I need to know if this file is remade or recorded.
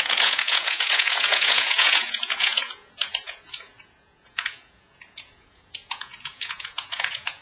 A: remade